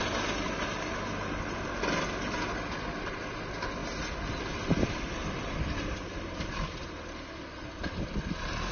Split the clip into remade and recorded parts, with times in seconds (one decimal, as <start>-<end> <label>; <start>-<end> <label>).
0.0-8.7 recorded